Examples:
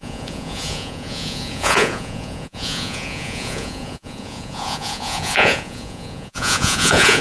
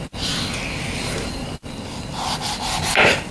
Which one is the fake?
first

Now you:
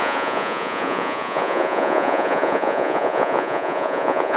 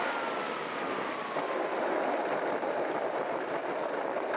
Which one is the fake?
first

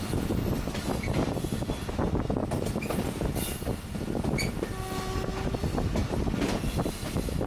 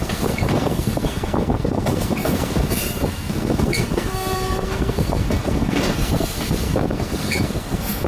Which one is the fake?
second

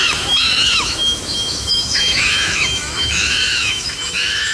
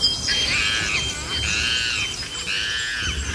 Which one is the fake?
first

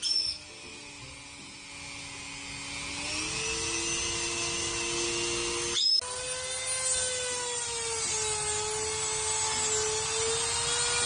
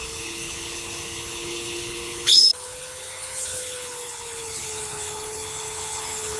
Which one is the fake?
second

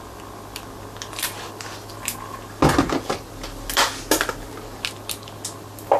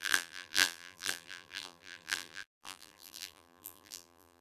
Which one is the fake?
second